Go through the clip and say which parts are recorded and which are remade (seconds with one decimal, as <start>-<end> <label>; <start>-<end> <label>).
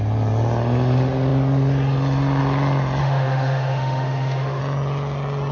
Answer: 0.0-3.0 recorded; 3.0-4.6 remade; 4.6-5.5 recorded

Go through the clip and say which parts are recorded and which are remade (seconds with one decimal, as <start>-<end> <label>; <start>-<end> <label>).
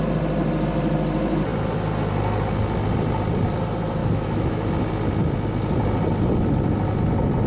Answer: 0.0-4.0 recorded; 4.0-4.7 remade; 4.7-7.5 recorded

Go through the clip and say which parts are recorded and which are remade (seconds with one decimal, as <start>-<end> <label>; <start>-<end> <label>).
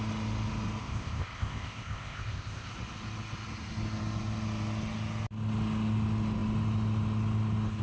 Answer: 0.0-0.8 recorded; 0.8-2.7 remade; 2.7-7.8 recorded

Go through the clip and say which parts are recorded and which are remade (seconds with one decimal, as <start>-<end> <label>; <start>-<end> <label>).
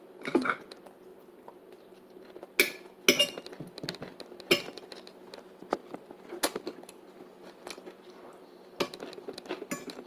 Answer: 0.0-10.1 recorded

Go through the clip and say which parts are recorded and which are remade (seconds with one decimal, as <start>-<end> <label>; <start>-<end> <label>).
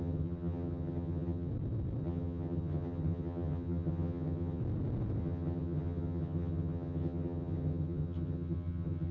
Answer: 0.0-1.5 remade; 1.5-2.0 recorded; 2.0-4.6 remade; 4.6-5.2 recorded; 5.2-9.1 remade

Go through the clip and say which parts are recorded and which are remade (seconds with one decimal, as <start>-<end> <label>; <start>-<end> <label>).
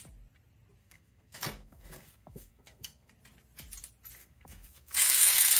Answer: 0.0-0.8 recorded; 0.8-3.1 remade; 3.1-4.2 recorded; 4.2-5.6 remade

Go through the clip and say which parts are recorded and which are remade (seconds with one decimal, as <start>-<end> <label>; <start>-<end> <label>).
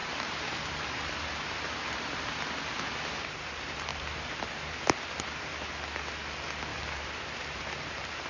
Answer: 0.0-0.7 remade; 0.7-3.9 recorded; 3.9-4.8 remade; 4.8-6.7 recorded; 6.7-7.6 remade; 7.6-8.3 recorded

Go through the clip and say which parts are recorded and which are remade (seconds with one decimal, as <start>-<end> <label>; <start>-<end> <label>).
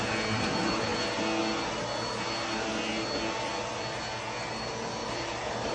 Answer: 0.0-5.0 recorded; 5.0-5.7 remade